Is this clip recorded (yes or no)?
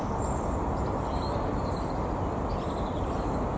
yes